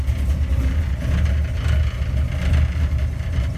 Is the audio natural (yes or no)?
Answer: yes